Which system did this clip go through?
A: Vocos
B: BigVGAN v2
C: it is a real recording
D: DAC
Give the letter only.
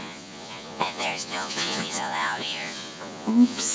A